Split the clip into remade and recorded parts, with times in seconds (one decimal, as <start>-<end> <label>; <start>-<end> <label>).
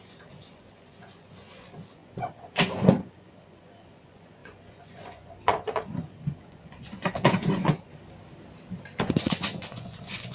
0.0-7.9 remade; 7.9-9.0 recorded; 9.0-10.3 remade